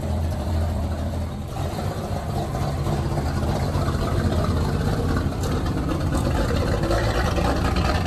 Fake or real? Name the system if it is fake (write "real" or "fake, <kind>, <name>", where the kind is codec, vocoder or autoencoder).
fake, vocoder, BigVGAN v2